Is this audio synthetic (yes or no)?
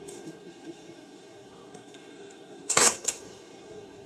yes